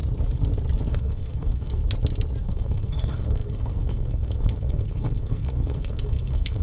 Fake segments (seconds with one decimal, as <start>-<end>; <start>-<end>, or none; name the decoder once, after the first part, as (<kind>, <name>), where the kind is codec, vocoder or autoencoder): 0.9-1.8 (codec, SNAC); 2.4-6.6